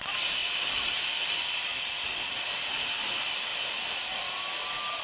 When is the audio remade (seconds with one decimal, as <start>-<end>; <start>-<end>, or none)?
none